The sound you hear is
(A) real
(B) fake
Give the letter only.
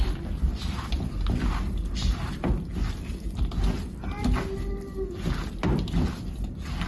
A